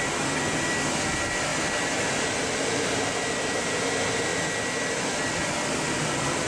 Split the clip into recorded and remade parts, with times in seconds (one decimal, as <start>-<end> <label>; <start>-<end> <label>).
0.0-6.5 recorded